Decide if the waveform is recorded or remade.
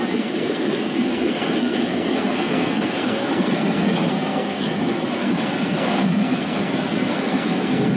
remade